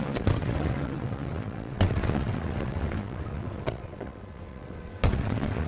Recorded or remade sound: remade